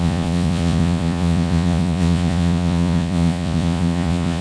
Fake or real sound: fake